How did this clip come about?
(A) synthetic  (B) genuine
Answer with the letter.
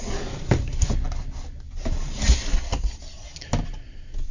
B